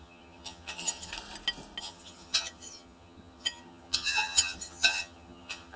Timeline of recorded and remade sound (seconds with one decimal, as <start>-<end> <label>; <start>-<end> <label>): 0.0-1.1 remade; 1.1-1.8 recorded; 1.8-5.8 remade